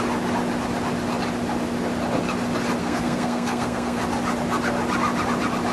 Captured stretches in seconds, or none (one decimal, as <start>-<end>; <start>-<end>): 0.0-2.8; 4.0-5.7